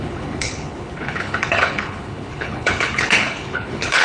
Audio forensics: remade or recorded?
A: remade